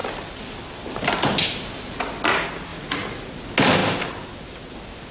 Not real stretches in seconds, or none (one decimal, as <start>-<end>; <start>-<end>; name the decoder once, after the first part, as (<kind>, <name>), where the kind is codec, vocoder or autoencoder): 2.7-3.3 (vocoder, Vocos)

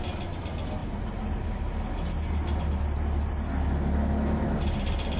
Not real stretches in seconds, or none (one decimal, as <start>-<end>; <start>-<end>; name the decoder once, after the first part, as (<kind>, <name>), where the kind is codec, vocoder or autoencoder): none

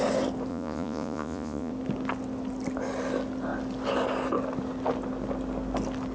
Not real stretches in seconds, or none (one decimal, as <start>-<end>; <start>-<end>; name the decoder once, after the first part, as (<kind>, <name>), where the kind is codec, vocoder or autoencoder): 0.5-1.7 (vocoder, Vocos)

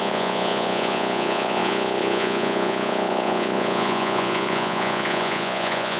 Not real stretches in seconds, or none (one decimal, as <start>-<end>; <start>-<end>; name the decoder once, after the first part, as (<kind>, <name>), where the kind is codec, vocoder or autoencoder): 0.0-6.0 (vocoder, Vocos)